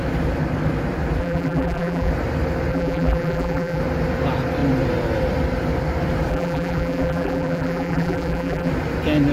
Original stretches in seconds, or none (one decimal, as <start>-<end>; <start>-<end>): 0.0-1.2; 2.1-2.7; 3.8-6.3; 8.7-9.3